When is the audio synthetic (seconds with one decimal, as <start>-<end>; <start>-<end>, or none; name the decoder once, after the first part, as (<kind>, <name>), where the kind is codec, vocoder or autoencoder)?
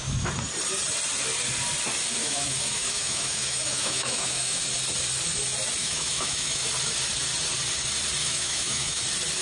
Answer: 2.2-4.6 (autoencoder, DAC-VAE); 5.8-6.7; 8.2-9.0